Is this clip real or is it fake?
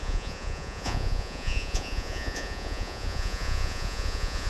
fake